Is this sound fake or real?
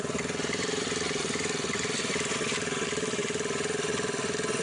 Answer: fake